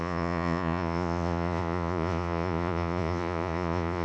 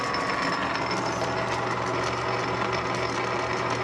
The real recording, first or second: second